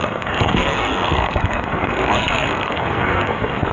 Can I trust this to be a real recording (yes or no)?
no